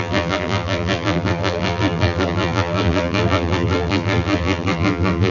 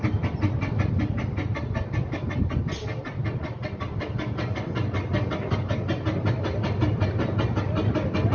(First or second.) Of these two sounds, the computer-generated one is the first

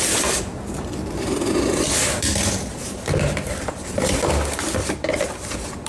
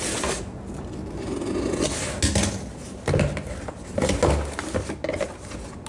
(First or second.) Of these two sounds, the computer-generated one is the first